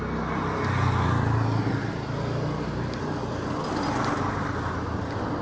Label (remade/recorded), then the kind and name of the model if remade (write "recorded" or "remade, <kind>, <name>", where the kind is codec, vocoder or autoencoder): recorded